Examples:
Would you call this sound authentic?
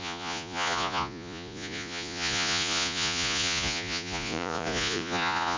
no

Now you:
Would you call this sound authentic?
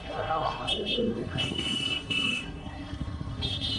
no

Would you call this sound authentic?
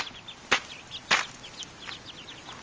yes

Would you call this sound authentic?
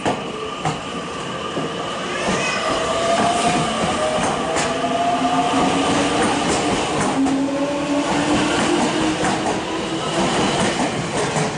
yes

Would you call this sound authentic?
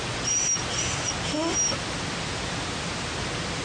yes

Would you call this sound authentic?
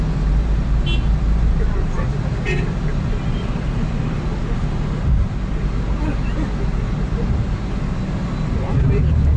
yes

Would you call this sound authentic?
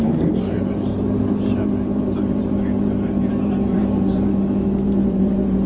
no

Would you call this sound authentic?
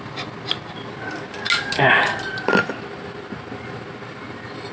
yes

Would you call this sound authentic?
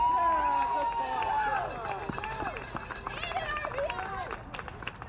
yes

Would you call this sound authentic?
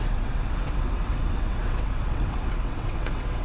no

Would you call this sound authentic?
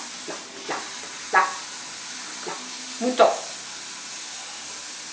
yes